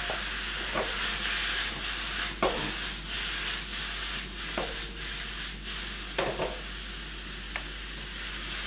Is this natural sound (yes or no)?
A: yes